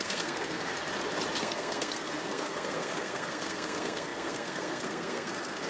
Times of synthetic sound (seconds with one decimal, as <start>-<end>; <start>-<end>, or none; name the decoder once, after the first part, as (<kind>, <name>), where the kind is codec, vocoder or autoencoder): 0.0-0.7 (codec, SNAC); 1.4-5.7